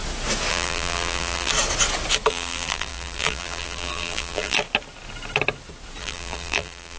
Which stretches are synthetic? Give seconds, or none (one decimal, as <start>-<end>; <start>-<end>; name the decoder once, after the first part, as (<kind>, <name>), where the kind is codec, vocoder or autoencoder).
0.5-1.5 (vocoder, BigVGAN v2); 2.3-4.6; 6.0-7.0